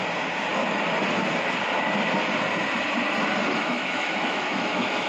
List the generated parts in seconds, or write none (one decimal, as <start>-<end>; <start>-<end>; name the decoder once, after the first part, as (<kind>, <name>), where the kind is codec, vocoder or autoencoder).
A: 3.6-5.1 (autoencoder, DAC-VAE)